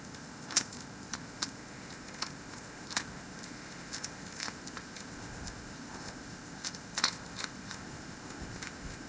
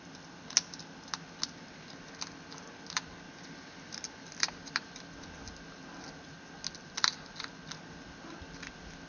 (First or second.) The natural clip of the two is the second